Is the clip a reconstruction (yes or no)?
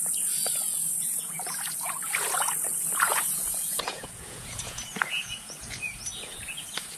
yes